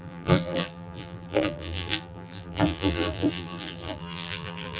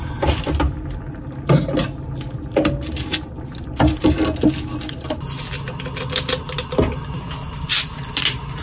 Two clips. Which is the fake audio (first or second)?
first